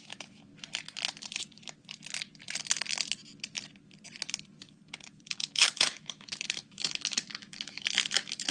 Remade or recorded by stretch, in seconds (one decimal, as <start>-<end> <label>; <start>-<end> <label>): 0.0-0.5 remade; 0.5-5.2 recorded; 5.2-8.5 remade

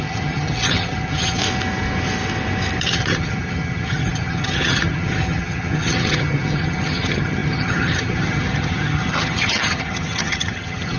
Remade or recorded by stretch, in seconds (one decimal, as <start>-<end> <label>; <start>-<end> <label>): 0.0-1.4 remade; 1.4-2.8 recorded; 2.8-11.0 remade

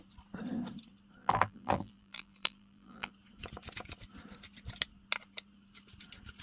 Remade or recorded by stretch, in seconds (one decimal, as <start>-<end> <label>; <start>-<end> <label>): 0.0-1.2 recorded; 1.2-3.1 remade; 3.1-6.4 recorded

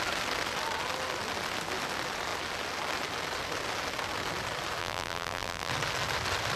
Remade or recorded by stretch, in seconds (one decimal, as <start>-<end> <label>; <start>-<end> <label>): 0.0-4.8 recorded; 4.8-5.7 remade; 5.7-6.6 recorded

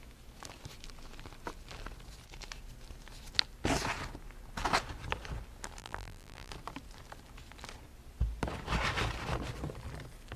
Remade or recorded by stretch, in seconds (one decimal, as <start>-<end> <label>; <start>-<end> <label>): 0.0-5.8 recorded; 5.8-6.5 remade; 6.5-10.4 recorded

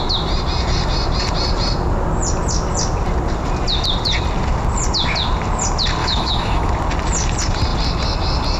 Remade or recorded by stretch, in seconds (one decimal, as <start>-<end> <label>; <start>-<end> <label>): 0.0-6.0 recorded; 6.0-6.7 remade; 6.7-8.6 recorded

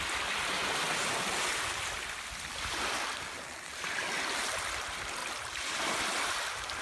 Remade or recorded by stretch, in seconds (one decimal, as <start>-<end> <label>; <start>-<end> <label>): 0.0-6.8 recorded